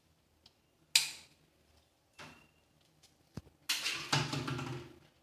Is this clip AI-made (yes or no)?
no